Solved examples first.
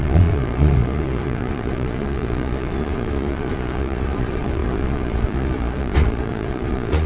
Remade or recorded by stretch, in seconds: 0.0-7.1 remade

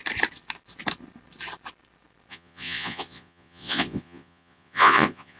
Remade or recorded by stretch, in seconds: 0.0-2.3 recorded; 2.3-5.4 remade

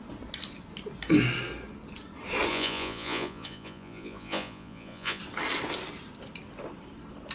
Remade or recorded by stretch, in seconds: 0.0-2.5 recorded; 2.5-5.2 remade; 5.2-7.3 recorded

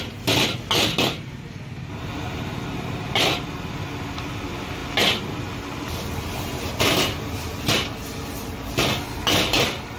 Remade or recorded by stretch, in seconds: 0.0-10.0 recorded

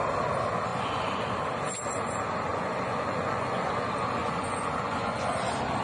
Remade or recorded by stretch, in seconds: 0.0-0.7 recorded; 0.7-1.3 remade; 1.3-2.5 recorded; 2.5-3.7 remade; 3.7-4.2 recorded; 4.2-5.3 remade; 5.3-5.8 recorded